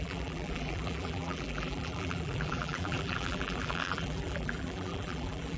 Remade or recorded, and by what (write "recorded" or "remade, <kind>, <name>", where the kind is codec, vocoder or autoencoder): remade, vocoder, BigVGAN v2